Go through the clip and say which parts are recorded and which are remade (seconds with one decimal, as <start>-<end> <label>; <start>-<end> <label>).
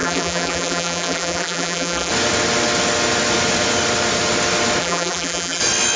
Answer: 0.0-2.1 remade; 2.1-4.8 recorded; 4.8-5.6 remade; 5.6-6.0 recorded